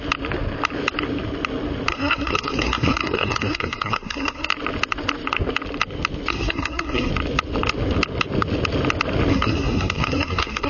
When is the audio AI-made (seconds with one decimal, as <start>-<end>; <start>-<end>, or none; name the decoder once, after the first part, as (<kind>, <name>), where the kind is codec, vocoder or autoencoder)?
1.9-4.5 (codec, SNAC); 6.3-7.1; 9.3-10.7